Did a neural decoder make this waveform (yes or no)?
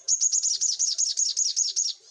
no